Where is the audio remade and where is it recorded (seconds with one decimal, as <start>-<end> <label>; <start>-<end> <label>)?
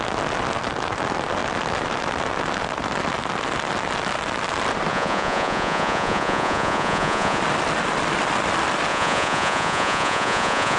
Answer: 0.0-4.9 recorded; 4.9-7.4 remade; 7.4-8.9 recorded; 8.9-10.8 remade